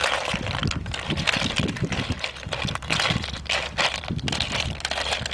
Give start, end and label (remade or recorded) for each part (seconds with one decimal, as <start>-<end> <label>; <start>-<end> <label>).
0.0-5.3 recorded